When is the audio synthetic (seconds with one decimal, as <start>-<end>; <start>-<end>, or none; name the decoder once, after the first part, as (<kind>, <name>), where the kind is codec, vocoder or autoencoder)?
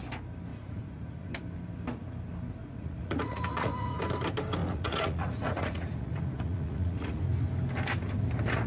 0.5-1.3 (vocoder, Vocos); 2.6-4.0; 4.6-7.2